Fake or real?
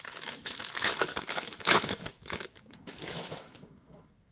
fake